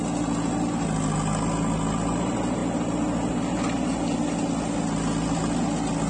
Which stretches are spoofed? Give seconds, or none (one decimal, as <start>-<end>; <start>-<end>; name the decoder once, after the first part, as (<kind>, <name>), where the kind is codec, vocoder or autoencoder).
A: none